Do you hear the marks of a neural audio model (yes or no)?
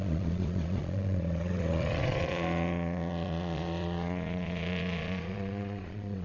yes